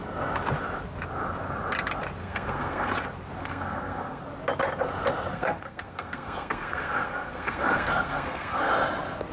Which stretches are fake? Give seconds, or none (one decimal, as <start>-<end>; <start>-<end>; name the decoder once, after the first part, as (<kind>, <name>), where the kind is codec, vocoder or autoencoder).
2.2-2.9 (codec, SNAC); 3.4-4.2; 5.3-8.7